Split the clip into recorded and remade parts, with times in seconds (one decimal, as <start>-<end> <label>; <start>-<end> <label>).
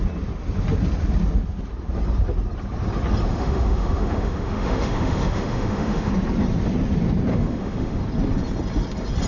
0.0-3.3 recorded; 3.3-6.1 remade; 6.1-7.3 recorded; 7.3-8.0 remade; 8.0-9.3 recorded